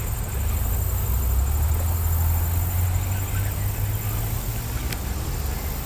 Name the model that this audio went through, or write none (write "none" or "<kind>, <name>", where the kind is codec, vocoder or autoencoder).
none